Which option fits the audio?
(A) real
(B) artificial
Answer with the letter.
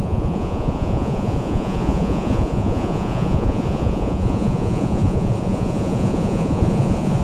B